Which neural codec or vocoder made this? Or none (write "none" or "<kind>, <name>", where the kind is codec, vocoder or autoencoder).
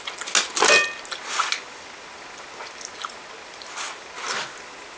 none